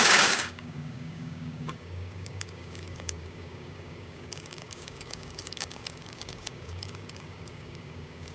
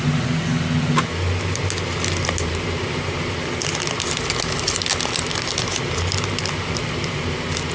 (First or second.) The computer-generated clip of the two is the first